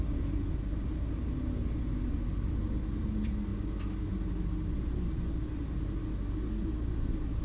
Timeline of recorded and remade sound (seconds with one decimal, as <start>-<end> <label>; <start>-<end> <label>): 0.0-7.4 recorded